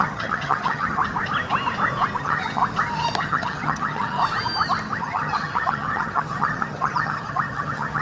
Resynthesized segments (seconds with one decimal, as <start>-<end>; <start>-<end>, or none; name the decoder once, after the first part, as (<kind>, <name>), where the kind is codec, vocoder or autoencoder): 0.0-1.0 (vocoder, HiFi-GAN); 2.2-2.6; 3.2-4.2; 5.0-8.0